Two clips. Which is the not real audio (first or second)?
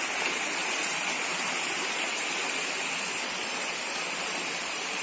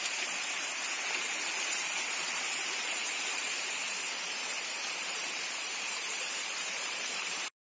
second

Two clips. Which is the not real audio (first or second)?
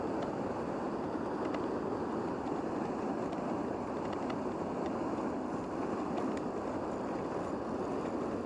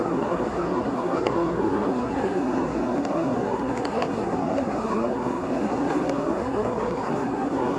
second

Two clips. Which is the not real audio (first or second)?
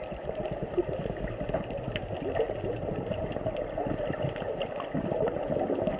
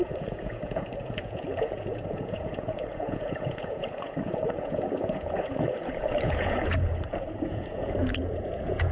second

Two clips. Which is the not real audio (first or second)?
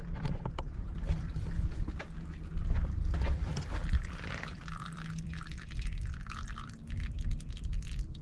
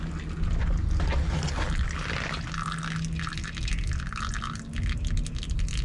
first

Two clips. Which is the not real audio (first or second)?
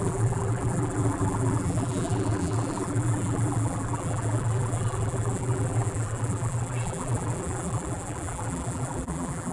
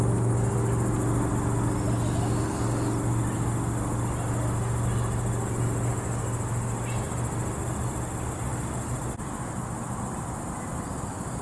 first